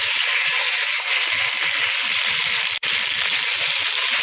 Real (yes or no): yes